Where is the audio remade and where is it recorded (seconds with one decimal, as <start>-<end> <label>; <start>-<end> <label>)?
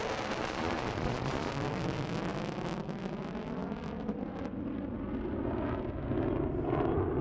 0.0-0.4 recorded; 0.4-1.5 remade; 1.5-7.2 recorded